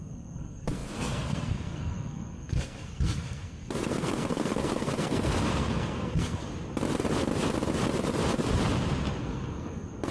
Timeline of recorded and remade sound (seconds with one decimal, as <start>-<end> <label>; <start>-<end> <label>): 0.0-6.5 remade; 6.5-9.2 recorded; 9.2-10.1 remade